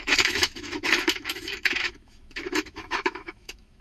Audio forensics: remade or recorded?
remade